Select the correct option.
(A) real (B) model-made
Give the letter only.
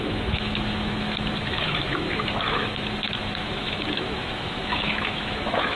B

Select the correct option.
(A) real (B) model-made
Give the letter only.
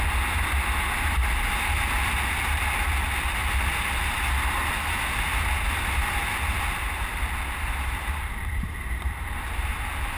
A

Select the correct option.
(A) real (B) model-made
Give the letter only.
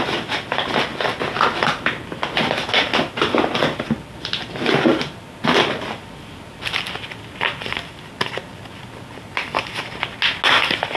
A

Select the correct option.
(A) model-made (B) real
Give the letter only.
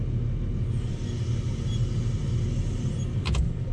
B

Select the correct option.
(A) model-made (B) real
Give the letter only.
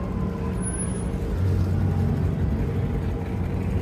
B